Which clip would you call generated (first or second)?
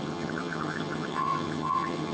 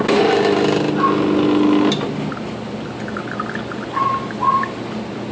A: first